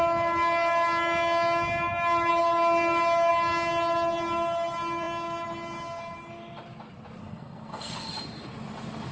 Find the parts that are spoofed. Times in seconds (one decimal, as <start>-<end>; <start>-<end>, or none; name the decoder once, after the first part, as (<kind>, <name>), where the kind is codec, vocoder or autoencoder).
7.2-8.1 (codec, SNAC)